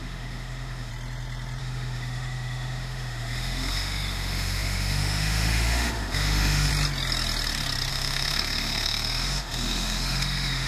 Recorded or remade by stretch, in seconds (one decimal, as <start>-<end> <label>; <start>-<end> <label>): 0.0-0.9 remade; 0.9-1.6 recorded; 1.6-6.7 remade; 6.7-7.9 recorded; 7.9-10.7 remade